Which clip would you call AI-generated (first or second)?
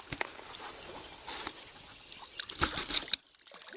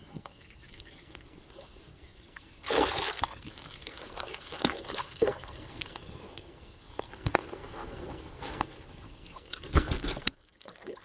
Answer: second